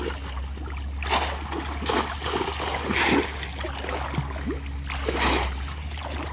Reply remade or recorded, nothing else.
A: recorded